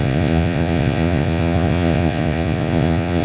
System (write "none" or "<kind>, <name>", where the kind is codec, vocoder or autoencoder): vocoder, Vocos